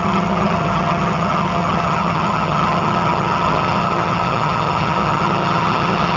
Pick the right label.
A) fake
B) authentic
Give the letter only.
A